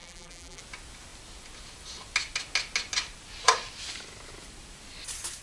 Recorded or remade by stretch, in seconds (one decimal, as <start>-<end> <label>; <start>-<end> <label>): 0.0-0.6 remade; 0.6-5.4 recorded